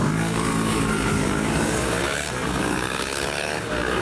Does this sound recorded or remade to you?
remade